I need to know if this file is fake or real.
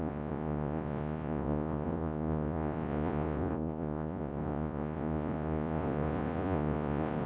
fake